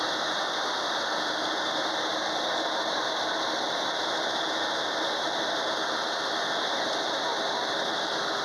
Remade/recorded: recorded